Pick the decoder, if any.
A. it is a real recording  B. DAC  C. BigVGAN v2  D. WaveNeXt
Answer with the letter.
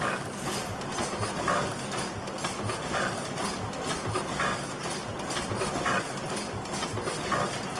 A